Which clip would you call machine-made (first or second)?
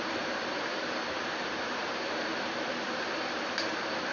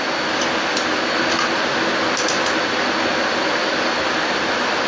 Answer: first